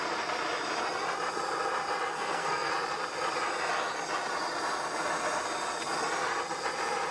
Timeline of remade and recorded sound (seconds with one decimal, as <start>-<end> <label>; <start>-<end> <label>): 0.0-2.1 recorded; 2.1-2.7 remade; 2.7-7.1 recorded

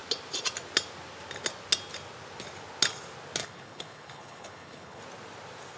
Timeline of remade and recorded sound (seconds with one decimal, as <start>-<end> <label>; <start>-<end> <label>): 0.0-3.4 recorded; 3.4-5.0 remade; 5.0-5.8 recorded

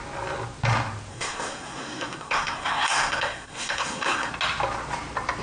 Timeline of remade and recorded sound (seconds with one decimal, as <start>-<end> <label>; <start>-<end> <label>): 0.0-1.1 recorded; 1.1-4.3 remade; 4.3-5.4 recorded

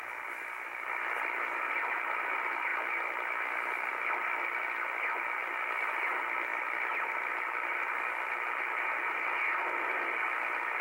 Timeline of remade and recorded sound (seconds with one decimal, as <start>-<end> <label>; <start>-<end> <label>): 0.0-0.7 recorded; 0.7-1.9 remade; 1.9-5.4 recorded; 5.4-5.9 remade; 5.9-6.5 recorded; 6.5-9.0 remade; 9.0-10.8 recorded

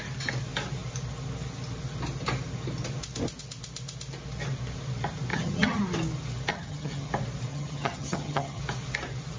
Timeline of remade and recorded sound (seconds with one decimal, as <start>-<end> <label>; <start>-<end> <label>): 0.0-5.3 recorded; 5.3-5.8 remade; 5.8-6.5 recorded; 6.5-7.1 remade; 7.1-7.5 recorded; 7.5-8.6 remade; 8.6-9.4 recorded